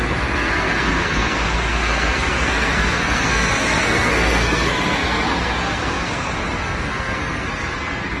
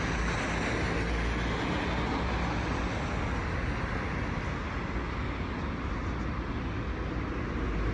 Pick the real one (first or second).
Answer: second